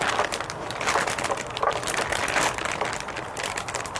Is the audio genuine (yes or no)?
yes